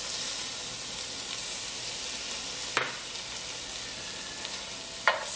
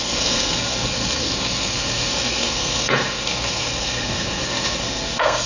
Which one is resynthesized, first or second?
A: second